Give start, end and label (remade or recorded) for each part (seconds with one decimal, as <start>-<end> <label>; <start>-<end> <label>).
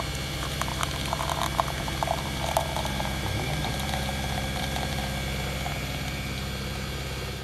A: 0.0-5.0 remade; 5.0-5.7 recorded; 5.7-7.4 remade